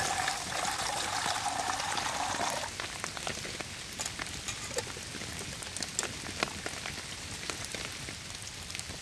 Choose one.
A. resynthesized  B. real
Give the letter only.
B